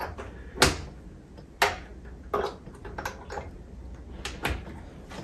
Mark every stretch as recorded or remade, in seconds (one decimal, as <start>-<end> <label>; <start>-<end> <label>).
0.0-5.2 recorded